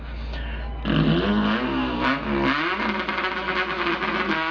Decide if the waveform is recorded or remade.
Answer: recorded